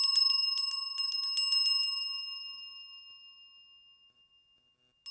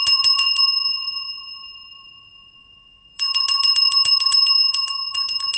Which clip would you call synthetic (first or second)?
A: second